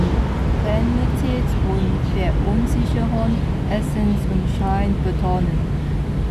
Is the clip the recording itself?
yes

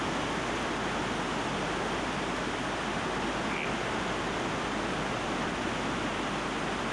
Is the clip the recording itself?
yes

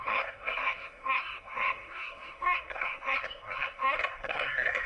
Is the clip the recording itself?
no